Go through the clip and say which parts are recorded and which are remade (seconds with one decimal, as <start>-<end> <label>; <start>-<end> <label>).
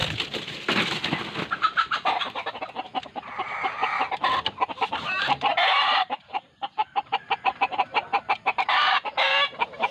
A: 0.0-1.5 recorded; 1.5-3.8 remade; 3.8-4.9 recorded; 4.9-9.9 remade